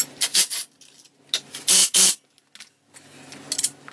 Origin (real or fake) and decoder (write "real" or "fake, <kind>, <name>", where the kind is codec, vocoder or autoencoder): real